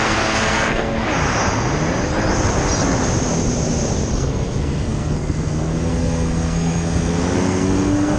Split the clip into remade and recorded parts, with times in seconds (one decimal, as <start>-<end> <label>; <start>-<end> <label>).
0.0-1.0 remade; 1.0-4.1 recorded; 4.1-8.2 remade